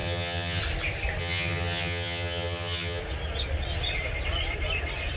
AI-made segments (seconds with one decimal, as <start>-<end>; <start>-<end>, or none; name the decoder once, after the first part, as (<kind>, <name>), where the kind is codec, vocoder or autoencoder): 0.0-0.6 (vocoder, HiFi-GAN); 1.2-3.0